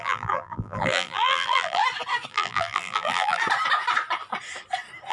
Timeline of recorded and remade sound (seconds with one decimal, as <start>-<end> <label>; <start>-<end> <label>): 0.0-1.8 remade; 1.8-2.3 recorded; 2.3-3.4 remade; 3.4-5.1 recorded